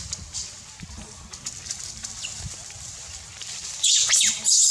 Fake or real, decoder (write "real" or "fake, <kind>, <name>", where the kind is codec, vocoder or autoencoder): real